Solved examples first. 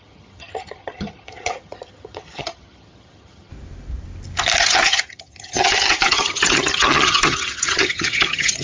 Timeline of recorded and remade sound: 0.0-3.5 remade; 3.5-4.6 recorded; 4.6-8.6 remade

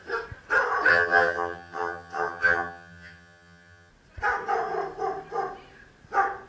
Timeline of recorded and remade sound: 0.0-0.9 recorded; 0.9-3.9 remade; 3.9-6.5 recorded

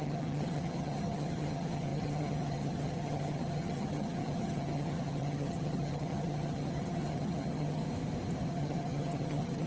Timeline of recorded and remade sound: 0.0-7.8 remade; 7.8-8.5 recorded; 8.5-9.7 remade

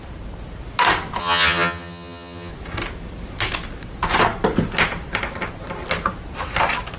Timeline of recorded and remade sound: 0.0-1.2 recorded; 1.2-2.5 remade; 2.5-7.0 recorded